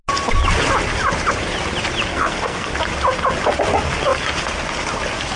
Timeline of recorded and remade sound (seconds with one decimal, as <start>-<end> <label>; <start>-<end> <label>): 0.0-2.1 recorded; 2.1-2.7 remade; 2.7-5.4 recorded